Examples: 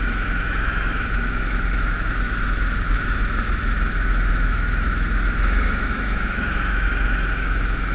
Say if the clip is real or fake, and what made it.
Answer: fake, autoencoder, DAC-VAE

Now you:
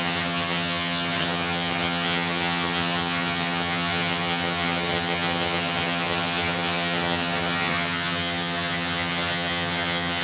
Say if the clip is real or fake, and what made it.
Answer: fake, vocoder, HiFi-GAN